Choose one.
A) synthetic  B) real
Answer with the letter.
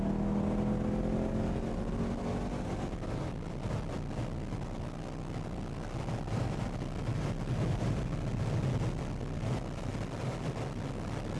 B